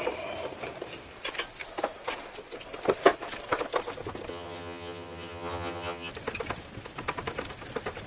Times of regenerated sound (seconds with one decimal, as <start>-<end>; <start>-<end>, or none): 4.3-6.1